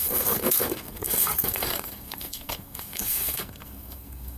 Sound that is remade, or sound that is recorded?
remade